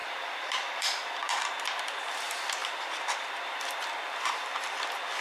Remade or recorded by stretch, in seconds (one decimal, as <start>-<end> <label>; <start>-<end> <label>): 0.0-1.5 remade; 1.5-5.2 recorded